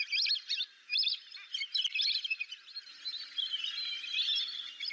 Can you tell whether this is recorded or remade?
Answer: recorded